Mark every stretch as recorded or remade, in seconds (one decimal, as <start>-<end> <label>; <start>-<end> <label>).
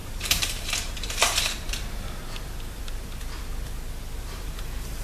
0.0-1.2 remade; 1.2-4.2 recorded; 4.2-5.0 remade